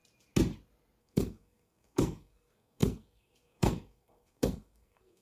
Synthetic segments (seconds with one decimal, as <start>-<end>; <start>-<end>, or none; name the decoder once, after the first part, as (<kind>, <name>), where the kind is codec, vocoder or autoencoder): 1.0-5.2 (codec, SNAC)